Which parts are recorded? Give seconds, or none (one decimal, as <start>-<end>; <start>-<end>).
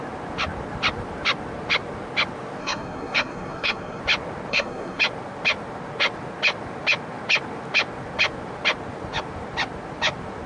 0.0-2.6; 4.0-4.5; 5.0-10.5